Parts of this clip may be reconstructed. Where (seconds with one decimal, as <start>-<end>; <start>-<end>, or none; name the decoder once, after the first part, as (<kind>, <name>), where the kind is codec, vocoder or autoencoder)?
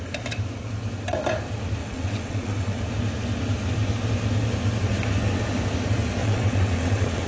1.8-2.8 (vocoder, WaveNeXt); 6.2-7.3